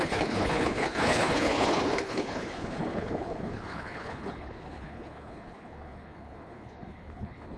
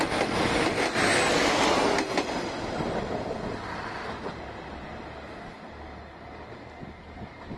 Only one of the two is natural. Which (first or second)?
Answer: second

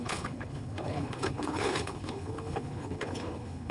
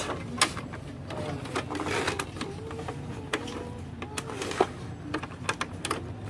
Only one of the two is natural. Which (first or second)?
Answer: second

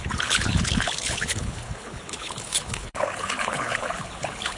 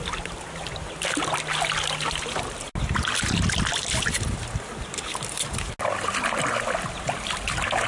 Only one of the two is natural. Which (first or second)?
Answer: second